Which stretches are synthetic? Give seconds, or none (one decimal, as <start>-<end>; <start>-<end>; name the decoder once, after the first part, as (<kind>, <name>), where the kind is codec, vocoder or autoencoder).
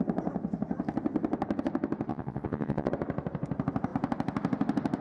2.1-2.9 (vocoder, WaveNeXt)